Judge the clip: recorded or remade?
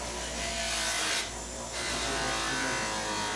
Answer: recorded